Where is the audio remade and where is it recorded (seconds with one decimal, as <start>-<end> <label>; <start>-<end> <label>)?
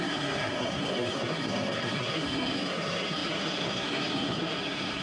0.0-5.0 remade